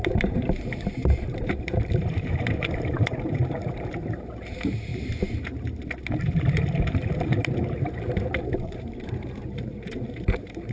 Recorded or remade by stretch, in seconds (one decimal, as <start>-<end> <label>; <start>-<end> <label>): 0.0-4.9 remade; 4.9-6.5 recorded; 6.5-10.7 remade